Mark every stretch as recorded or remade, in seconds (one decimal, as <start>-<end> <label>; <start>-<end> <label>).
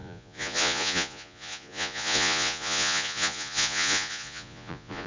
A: 0.0-5.1 remade